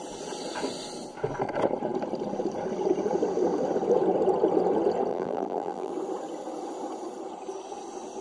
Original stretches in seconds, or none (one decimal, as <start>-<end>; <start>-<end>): 0.0-5.1; 5.9-8.2